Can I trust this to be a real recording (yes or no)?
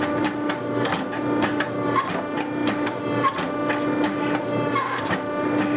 yes